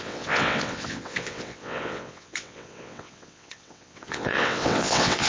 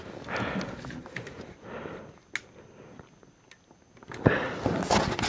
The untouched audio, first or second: second